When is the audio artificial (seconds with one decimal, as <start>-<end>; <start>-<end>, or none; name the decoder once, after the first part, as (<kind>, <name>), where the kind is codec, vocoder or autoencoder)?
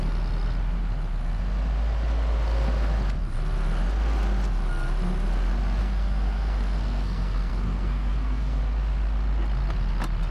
5.8-8.6 (codec, SNAC)